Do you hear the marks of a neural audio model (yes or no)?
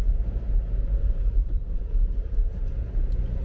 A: yes